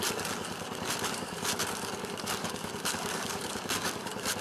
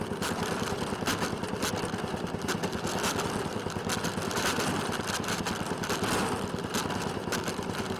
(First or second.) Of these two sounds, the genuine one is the second